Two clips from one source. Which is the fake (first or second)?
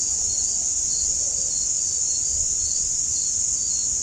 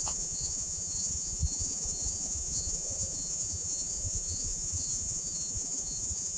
second